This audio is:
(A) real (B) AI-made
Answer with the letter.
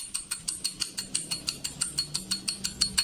A